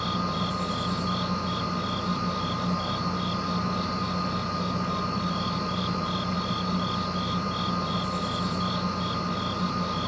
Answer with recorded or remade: recorded